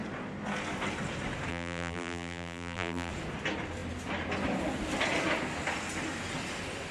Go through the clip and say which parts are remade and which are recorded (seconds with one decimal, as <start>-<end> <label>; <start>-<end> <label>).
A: 0.0-1.5 recorded; 1.5-3.1 remade; 3.1-6.9 recorded